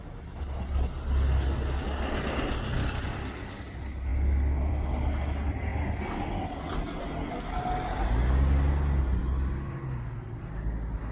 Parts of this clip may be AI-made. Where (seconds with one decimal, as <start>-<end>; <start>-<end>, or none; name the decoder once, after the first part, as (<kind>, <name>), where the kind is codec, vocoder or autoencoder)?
none